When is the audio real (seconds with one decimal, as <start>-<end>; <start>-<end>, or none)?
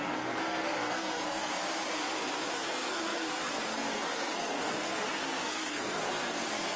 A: 1.5-2.5